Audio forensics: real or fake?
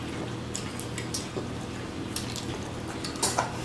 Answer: real